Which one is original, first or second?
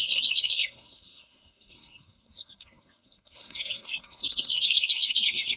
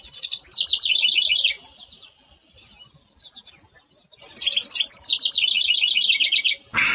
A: second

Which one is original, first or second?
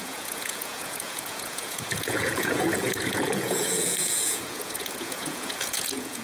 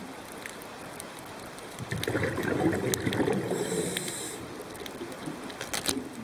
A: second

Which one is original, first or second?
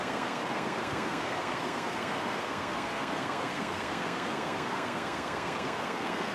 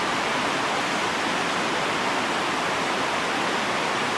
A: second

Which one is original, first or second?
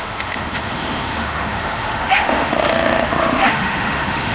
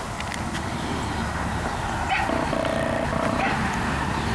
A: second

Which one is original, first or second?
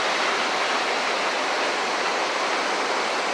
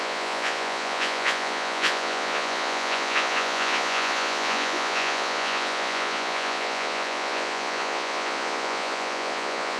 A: first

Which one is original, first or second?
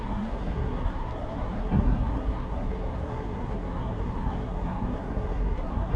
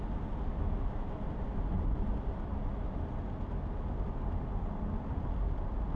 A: second